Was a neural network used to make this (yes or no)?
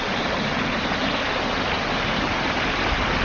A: no